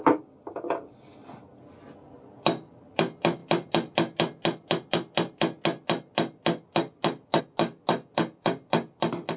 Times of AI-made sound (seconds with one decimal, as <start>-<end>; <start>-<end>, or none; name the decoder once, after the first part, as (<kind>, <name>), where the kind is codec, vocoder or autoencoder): none